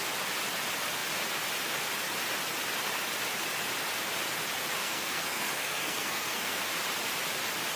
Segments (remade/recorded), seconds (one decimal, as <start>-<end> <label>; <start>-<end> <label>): 0.0-4.8 recorded; 4.8-6.6 remade; 6.6-7.8 recorded